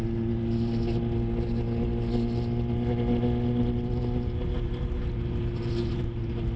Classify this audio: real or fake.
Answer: real